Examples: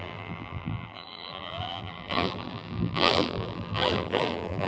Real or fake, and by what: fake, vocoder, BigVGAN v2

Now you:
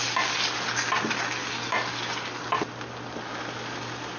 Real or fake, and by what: real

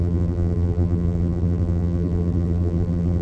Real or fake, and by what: fake, vocoder, BigVGAN v2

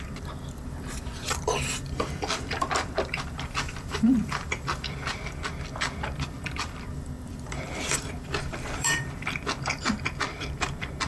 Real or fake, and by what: fake, vocoder, BigVGAN v2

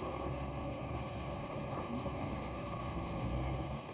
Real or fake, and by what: fake, codec, SNAC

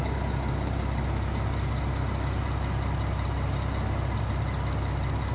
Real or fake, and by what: real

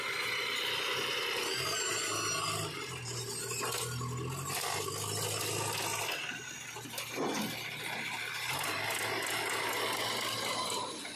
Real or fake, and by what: real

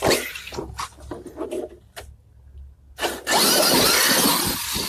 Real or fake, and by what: real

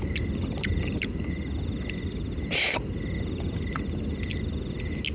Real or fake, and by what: real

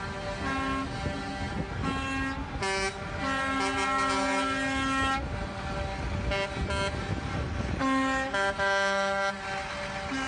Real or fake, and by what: real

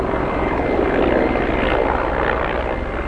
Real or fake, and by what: real